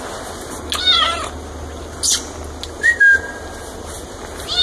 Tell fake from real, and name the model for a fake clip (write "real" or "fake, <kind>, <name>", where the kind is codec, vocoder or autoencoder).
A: real